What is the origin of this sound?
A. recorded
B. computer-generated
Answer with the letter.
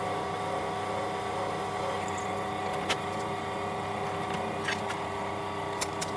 A